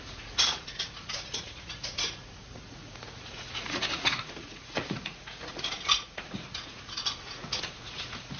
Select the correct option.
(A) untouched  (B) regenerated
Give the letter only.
B